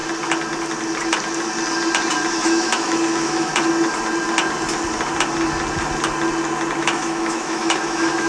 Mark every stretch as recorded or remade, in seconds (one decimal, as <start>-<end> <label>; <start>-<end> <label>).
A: 0.0-2.3 recorded; 2.3-3.5 remade; 3.5-6.8 recorded; 6.8-8.3 remade